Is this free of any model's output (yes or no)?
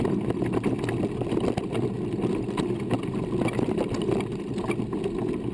yes